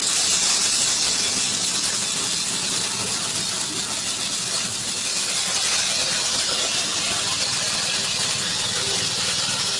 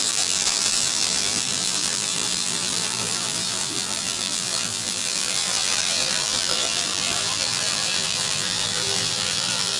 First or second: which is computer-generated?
second